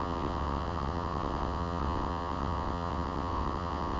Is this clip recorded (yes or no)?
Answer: no